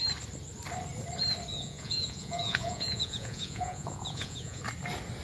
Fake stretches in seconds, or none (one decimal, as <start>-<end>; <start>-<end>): 1.5-4.6